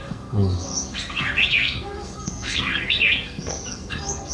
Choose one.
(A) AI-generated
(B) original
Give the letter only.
A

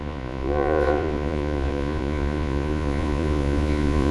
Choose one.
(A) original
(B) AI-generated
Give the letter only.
B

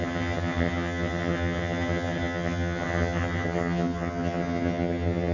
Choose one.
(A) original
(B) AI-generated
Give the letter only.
B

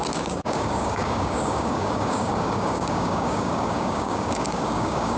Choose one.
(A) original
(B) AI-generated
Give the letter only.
B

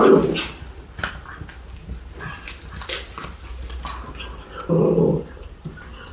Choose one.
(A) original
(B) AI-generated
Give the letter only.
A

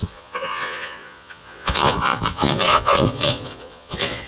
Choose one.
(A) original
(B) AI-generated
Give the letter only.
B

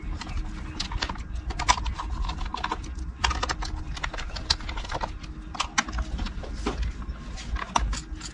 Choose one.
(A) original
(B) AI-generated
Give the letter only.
A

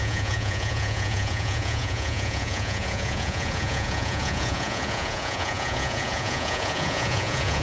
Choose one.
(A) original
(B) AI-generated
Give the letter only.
B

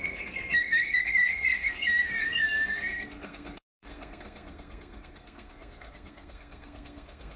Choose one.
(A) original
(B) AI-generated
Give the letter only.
B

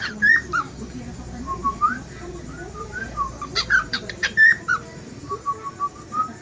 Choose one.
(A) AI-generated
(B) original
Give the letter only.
A